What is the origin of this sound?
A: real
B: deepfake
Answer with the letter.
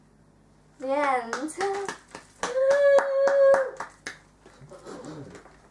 A